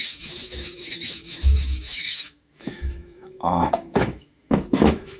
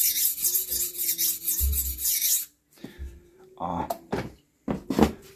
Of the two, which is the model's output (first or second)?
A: first